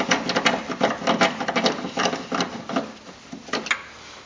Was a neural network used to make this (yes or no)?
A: no